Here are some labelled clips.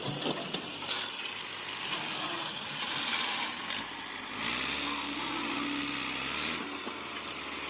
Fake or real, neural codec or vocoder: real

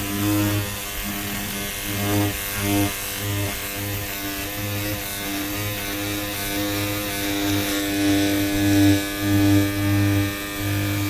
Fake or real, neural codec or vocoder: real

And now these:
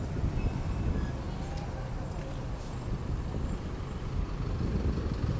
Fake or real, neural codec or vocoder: real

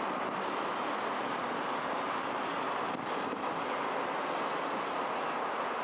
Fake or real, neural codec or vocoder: real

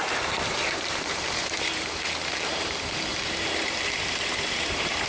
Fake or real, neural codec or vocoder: fake, vocoder, BigVGAN v2